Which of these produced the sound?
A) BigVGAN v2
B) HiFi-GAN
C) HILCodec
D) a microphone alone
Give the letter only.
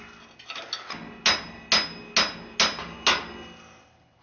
D